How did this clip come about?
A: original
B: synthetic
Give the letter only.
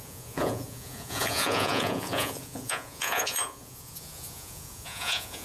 B